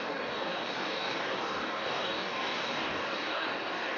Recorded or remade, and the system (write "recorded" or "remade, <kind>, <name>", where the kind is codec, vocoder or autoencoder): remade, codec, DAC